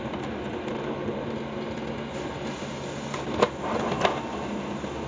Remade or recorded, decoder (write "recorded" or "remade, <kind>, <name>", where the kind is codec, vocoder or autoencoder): recorded